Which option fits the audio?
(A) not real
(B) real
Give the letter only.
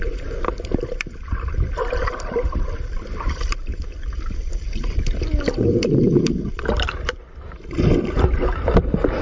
A